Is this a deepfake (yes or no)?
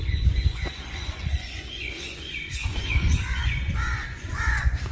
yes